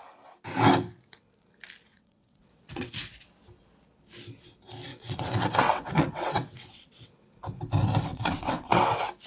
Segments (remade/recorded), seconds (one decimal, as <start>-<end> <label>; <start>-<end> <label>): 0.0-1.9 recorded; 1.9-2.9 remade; 2.9-4.9 recorded; 4.9-7.3 remade; 7.3-8.1 recorded; 8.1-8.8 remade; 8.8-9.3 recorded